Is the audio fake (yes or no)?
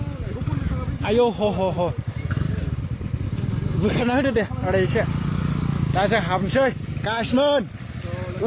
no